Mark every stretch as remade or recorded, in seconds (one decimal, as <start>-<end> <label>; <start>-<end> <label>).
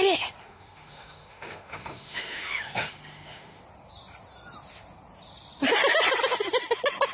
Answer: 0.0-0.4 recorded; 0.4-3.6 remade; 3.6-7.1 recorded